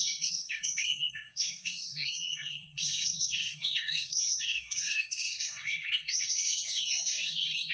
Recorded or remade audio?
remade